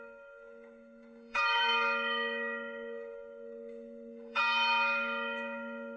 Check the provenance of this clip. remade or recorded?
remade